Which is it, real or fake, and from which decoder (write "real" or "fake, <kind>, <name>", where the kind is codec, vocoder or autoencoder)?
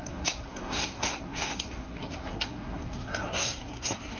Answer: fake, codec, SNAC